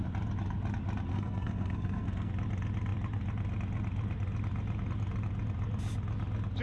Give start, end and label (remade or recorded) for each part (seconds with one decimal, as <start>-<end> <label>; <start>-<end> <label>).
0.0-1.1 recorded; 1.1-2.3 remade; 2.3-6.6 recorded